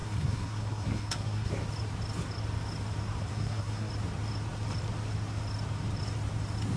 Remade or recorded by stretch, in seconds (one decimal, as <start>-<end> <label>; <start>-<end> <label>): 0.0-1.5 remade; 1.5-3.3 recorded; 3.3-3.9 remade; 3.9-6.8 recorded